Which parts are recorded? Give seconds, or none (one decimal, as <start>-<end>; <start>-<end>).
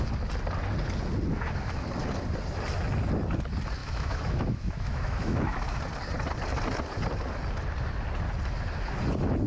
0.0-3.8; 5.8-9.5